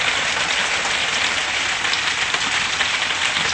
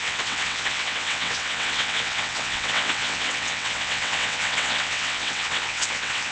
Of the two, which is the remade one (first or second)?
second